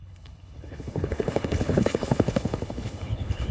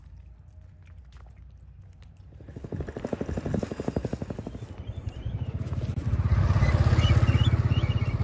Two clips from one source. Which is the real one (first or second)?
second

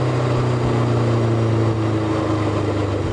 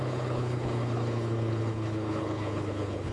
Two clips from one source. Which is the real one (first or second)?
first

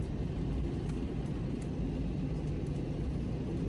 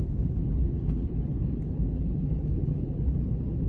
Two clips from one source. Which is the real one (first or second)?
first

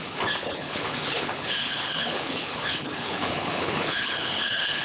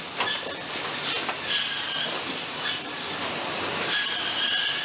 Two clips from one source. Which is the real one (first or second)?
second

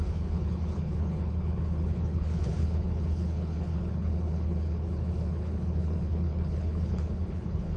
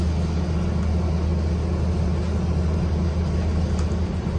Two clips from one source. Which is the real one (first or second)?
second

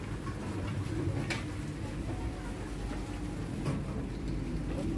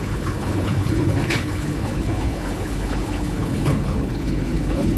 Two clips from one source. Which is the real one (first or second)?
first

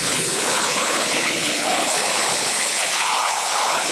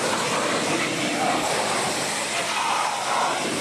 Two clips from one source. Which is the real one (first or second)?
second